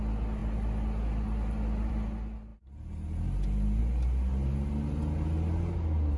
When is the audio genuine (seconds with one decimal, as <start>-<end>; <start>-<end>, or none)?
0.0-6.2